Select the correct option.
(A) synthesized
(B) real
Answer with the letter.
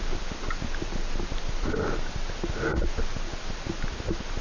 B